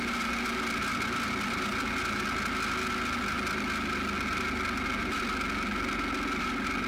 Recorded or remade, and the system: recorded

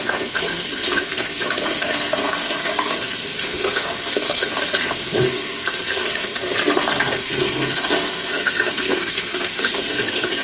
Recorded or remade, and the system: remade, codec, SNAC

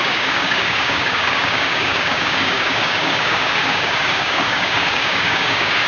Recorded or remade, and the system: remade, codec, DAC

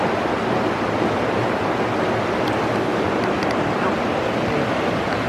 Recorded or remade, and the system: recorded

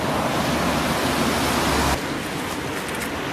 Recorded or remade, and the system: recorded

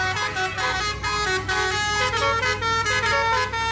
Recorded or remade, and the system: recorded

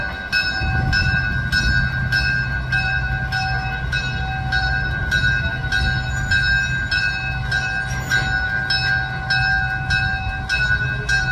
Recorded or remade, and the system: recorded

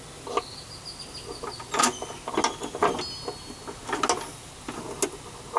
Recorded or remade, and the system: recorded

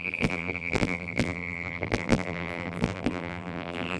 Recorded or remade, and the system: remade, vocoder, BigVGAN v2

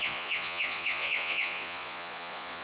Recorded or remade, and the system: remade, vocoder, Vocos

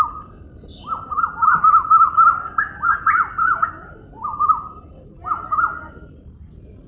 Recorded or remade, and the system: recorded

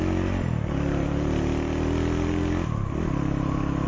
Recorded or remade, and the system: recorded